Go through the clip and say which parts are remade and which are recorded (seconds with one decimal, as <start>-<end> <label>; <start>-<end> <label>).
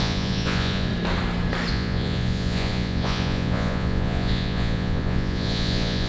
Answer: 0.0-0.9 remade; 0.9-1.7 recorded; 1.7-6.1 remade